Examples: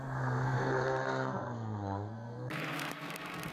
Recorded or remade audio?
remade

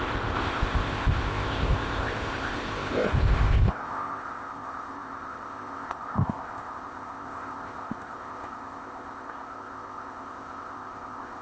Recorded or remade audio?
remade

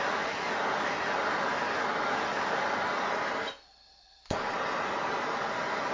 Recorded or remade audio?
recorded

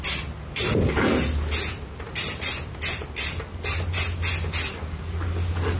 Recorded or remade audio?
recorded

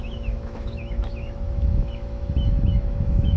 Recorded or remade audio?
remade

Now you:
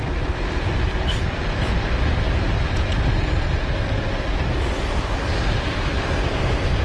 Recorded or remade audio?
recorded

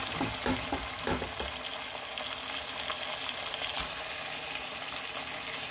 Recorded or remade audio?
recorded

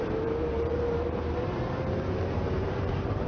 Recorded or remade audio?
remade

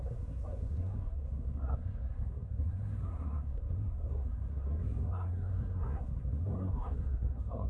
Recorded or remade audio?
remade